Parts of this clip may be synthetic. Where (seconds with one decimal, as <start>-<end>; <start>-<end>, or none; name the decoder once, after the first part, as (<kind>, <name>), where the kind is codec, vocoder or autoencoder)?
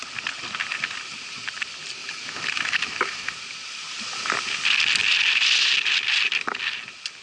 2.0-3.3 (autoencoder, DAC-VAE)